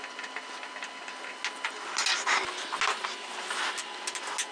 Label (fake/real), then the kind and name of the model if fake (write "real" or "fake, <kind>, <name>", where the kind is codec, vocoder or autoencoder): real